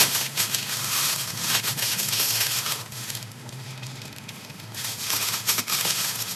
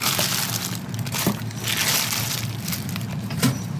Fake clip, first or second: first